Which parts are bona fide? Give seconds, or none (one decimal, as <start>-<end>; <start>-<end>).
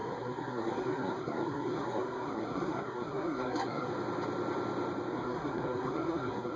3.9-5.1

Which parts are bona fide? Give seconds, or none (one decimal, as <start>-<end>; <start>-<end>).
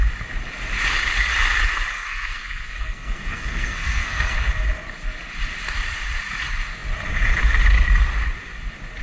0.0-1.9; 4.5-9.0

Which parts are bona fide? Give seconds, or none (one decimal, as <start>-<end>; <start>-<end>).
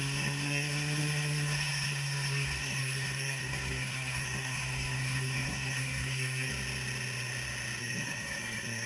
6.5-7.8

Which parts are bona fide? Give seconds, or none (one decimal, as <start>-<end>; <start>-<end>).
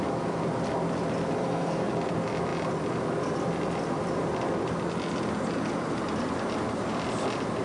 0.0-1.4; 1.9-7.6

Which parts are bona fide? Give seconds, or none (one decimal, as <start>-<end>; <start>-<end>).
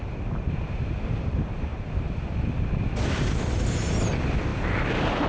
0.0-5.3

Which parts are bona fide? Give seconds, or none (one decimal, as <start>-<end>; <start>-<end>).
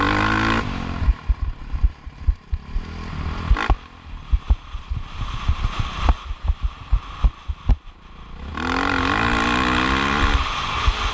0.0-11.1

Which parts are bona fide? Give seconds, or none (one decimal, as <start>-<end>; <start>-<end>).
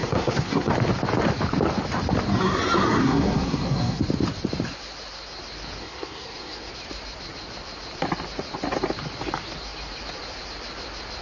0.7-3.0; 4.0-5.8; 6.7-11.2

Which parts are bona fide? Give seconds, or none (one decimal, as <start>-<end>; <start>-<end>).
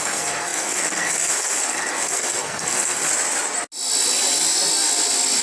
3.1-5.4